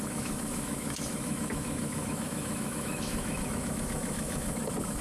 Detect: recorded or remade remade